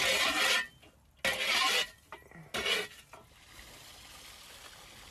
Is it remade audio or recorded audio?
recorded